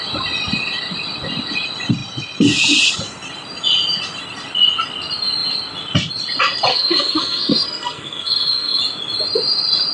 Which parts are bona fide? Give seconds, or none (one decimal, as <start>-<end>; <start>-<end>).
0.0-6.7; 8.8-9.9